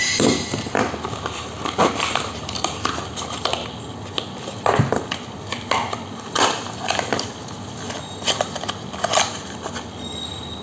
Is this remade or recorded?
recorded